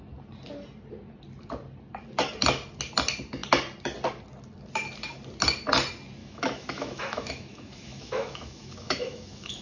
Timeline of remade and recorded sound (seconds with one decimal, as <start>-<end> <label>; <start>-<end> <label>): 0.0-6.2 recorded; 6.2-9.6 remade